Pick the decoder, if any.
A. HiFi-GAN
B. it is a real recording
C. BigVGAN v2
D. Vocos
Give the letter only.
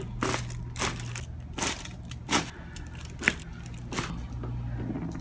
B